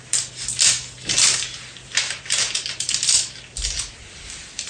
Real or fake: real